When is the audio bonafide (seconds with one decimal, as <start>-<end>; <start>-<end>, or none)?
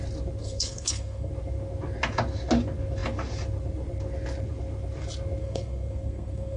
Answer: 0.0-0.4; 1.3-5.4